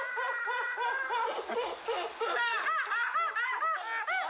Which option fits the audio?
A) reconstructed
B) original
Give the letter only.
B